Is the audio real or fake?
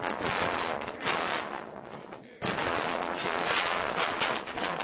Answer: fake